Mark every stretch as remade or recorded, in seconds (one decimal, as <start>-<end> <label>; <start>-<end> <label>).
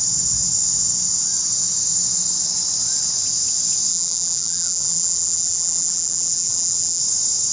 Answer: 0.0-3.9 recorded; 3.9-7.0 remade; 7.0-7.5 recorded